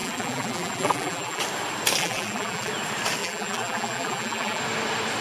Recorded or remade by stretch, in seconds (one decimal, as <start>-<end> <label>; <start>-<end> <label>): 0.0-1.4 remade; 1.4-2.0 recorded; 2.0-2.7 remade; 2.7-3.2 recorded; 3.2-4.6 remade; 4.6-5.2 recorded